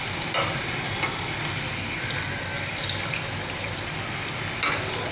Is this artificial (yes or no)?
no